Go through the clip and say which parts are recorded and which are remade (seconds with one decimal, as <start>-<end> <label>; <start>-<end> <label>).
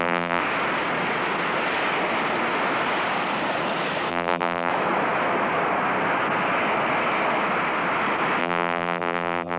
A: 0.0-0.4 remade; 0.4-4.1 recorded; 4.1-4.7 remade; 4.7-8.4 recorded; 8.4-9.6 remade